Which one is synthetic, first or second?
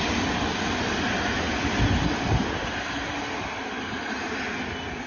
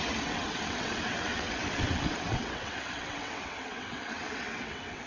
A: second